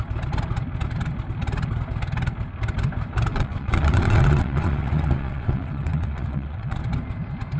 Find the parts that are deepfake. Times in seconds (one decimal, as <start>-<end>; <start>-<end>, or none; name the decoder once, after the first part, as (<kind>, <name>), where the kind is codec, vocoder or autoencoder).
3.3-6.8 (vocoder, WaveNeXt)